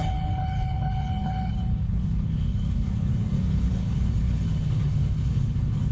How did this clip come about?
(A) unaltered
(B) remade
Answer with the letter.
B